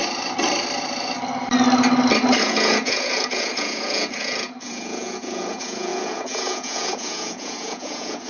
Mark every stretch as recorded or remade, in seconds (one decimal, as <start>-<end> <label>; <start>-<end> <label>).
0.0-2.4 recorded; 2.4-8.3 remade